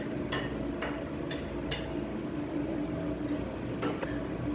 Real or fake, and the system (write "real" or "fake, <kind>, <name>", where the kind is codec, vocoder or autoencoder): real